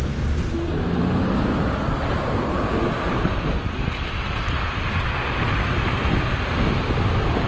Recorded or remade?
recorded